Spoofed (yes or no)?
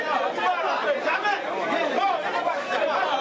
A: no